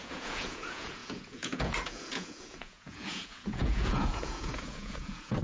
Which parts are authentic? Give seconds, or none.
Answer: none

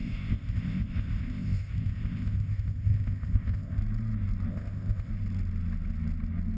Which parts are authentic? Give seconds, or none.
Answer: 3.8-4.5; 5.1-6.6

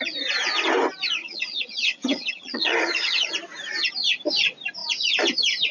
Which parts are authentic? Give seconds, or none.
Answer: 0.0-1.2; 3.3-5.7

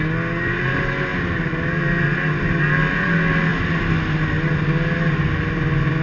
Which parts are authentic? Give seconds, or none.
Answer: 0.0-6.0

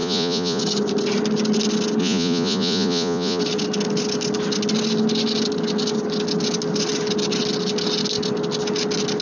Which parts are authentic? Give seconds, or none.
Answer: 0.6-2.0; 3.4-9.2

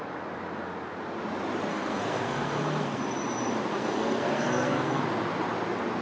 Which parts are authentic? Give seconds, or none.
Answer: 0.0-1.7; 3.0-3.7; 5.0-6.0

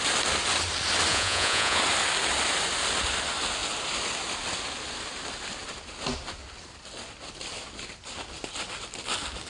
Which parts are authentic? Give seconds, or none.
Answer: 0.0-1.1; 1.8-9.5